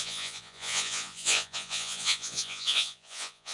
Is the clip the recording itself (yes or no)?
no